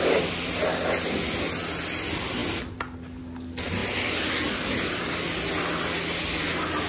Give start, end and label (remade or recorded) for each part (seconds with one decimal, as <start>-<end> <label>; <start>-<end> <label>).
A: 0.0-6.9 recorded

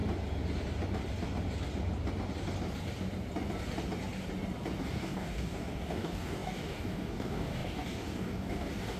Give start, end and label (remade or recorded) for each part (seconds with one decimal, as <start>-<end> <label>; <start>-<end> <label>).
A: 0.0-4.8 recorded; 4.8-9.0 remade

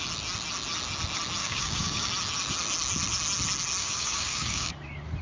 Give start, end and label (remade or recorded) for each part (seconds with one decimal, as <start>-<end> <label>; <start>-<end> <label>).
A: 0.0-1.4 recorded; 1.4-2.1 remade; 2.1-3.8 recorded; 3.8-4.7 remade; 4.7-5.2 recorded

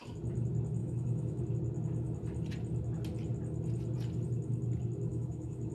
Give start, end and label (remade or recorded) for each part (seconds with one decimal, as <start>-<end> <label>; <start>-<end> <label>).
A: 0.0-0.8 recorded; 0.8-1.4 remade; 1.4-5.1 recorded; 5.1-5.7 remade

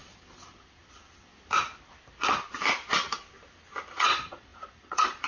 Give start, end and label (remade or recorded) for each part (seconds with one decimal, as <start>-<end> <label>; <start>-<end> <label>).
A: 0.0-1.3 remade; 1.3-3.9 recorded; 3.9-5.3 remade

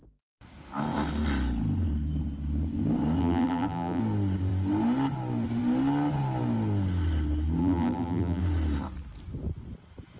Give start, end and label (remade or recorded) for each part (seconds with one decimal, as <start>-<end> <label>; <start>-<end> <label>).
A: 0.0-3.2 recorded; 3.2-4.0 remade; 4.0-7.6 recorded; 7.6-8.4 remade; 8.4-10.2 recorded

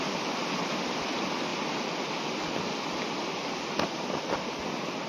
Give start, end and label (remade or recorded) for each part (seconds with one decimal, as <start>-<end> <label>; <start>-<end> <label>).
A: 0.0-5.1 recorded

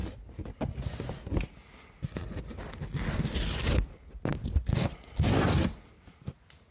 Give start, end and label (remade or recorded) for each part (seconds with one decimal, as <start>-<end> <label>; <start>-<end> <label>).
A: 0.0-6.7 recorded